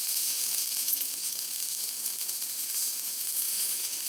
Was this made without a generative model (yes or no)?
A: no